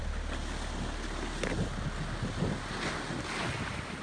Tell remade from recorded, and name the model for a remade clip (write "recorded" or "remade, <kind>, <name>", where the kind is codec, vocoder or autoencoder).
recorded